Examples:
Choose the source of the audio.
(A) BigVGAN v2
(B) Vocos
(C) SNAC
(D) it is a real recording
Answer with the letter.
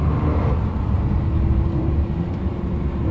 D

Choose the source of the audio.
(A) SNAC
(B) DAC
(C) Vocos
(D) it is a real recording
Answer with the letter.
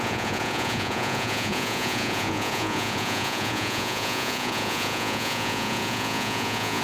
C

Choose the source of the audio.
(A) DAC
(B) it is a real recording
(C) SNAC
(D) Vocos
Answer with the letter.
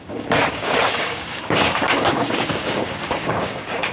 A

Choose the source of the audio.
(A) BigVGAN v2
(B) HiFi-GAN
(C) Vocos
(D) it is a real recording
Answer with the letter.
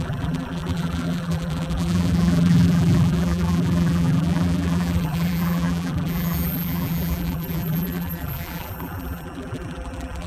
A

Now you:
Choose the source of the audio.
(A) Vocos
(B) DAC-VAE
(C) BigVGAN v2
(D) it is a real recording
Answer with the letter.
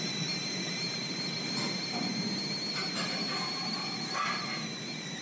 D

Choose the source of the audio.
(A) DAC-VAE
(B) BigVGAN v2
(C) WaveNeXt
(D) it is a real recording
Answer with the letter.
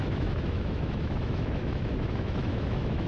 A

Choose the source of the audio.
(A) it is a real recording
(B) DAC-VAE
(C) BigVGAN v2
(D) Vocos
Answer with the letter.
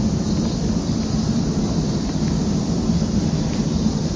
C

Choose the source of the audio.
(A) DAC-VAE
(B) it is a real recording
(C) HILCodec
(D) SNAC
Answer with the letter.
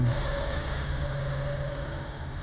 A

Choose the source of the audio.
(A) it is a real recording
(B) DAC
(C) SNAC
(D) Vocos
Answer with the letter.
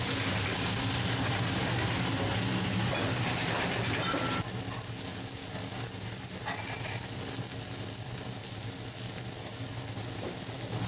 A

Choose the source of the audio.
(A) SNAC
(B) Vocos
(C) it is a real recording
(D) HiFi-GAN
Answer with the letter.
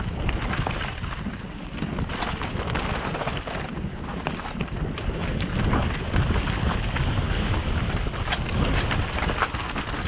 C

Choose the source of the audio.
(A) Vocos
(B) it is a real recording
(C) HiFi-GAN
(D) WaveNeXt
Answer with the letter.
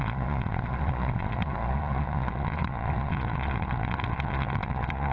A